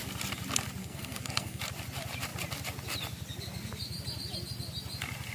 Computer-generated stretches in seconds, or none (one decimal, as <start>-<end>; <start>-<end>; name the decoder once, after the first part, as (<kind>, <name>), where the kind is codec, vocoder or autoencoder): 0.8-1.6 (codec, SNAC)